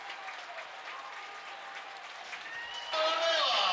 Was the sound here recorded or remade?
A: recorded